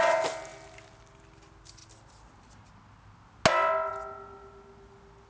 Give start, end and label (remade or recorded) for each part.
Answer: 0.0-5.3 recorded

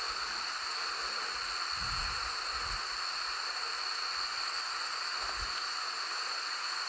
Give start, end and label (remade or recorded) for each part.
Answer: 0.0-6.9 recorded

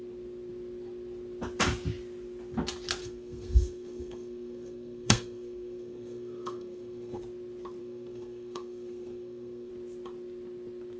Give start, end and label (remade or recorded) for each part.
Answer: 0.0-3.0 recorded; 3.0-7.2 remade; 7.2-7.8 recorded; 7.8-9.7 remade; 9.7-11.0 recorded

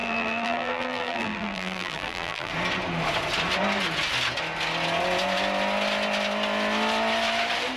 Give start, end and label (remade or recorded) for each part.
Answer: 0.0-2.5 remade; 2.5-7.8 recorded

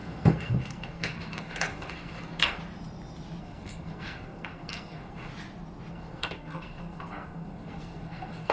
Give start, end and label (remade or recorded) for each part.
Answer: 0.0-2.6 remade; 2.6-3.4 recorded; 3.4-5.3 remade; 5.3-5.9 recorded; 5.9-8.5 remade

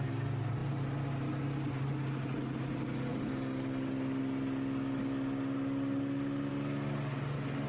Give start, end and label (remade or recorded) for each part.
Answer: 0.0-7.7 recorded